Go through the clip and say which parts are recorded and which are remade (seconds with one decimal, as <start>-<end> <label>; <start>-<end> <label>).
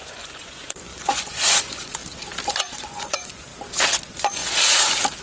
0.0-2.0 remade; 2.0-2.5 recorded; 2.5-3.5 remade; 3.5-4.0 recorded; 4.0-4.4 remade; 4.4-5.2 recorded